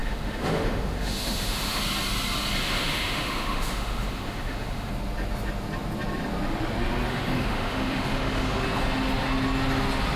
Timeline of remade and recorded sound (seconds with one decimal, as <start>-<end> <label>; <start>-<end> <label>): 0.0-1.8 remade; 1.8-2.6 recorded; 2.6-4.9 remade; 4.9-7.1 recorded; 7.1-8.6 remade; 8.6-10.2 recorded